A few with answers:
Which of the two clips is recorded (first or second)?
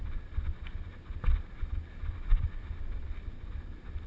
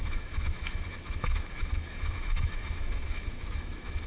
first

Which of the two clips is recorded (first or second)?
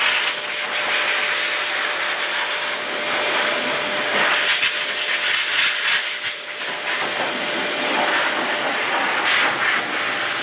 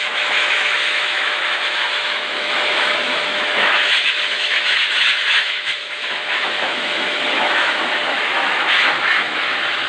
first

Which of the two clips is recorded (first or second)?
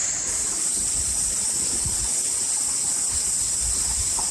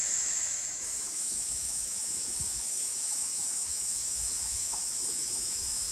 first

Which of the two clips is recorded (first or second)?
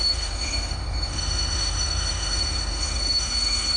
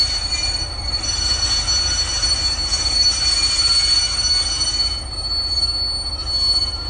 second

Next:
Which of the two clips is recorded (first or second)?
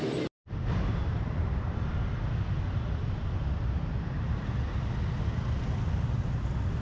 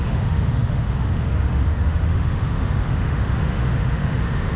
first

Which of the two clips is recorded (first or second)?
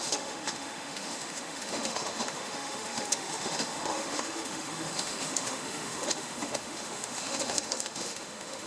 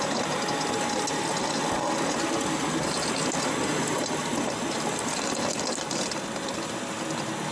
second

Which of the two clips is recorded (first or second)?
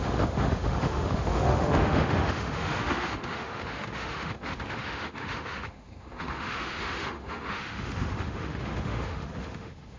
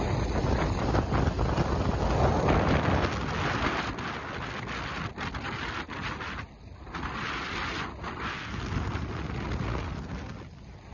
second